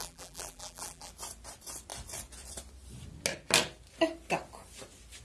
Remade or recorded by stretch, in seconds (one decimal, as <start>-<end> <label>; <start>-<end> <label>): 0.0-1.1 remade; 1.1-5.2 recorded

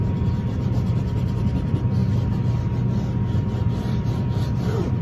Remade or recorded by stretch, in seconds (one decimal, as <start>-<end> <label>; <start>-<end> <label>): 0.0-2.0 remade; 2.0-3.7 recorded; 3.7-5.0 remade